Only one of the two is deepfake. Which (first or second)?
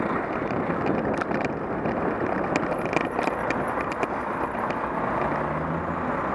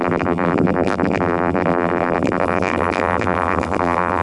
second